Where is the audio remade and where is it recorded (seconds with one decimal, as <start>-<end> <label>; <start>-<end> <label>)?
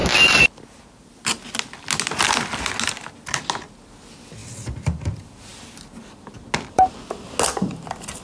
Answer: 0.0-8.2 recorded